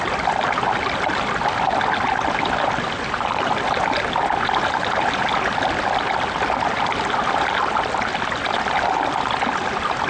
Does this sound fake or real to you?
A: real